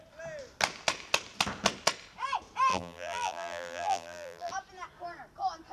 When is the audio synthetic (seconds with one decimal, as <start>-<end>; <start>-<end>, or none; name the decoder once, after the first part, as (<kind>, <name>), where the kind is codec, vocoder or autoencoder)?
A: 2.7-4.5 (vocoder, BigVGAN v2)